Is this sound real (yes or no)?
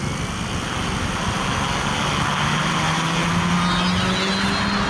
yes